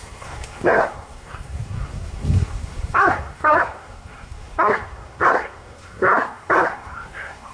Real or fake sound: fake